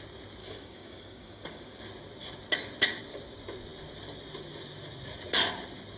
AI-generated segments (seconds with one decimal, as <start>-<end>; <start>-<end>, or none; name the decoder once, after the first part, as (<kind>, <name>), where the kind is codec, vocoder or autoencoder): 0.4-1.8 (codec, DAC)